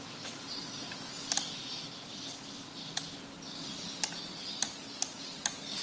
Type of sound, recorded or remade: recorded